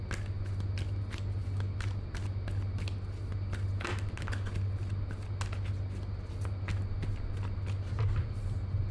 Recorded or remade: recorded